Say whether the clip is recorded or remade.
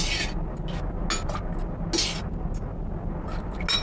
recorded